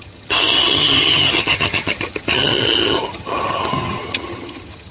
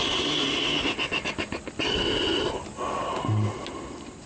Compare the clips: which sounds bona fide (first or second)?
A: second